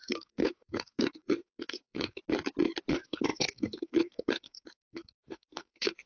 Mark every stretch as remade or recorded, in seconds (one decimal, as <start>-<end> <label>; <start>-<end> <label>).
0.0-2.2 remade; 2.2-2.9 recorded; 2.9-6.1 remade